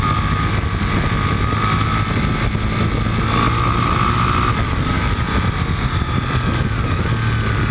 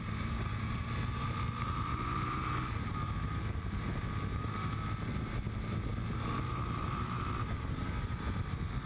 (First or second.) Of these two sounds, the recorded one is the first